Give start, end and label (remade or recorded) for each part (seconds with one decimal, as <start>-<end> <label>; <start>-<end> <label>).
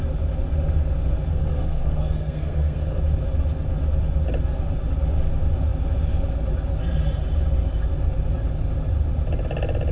0.0-1.3 recorded; 1.3-3.0 remade; 3.0-9.9 recorded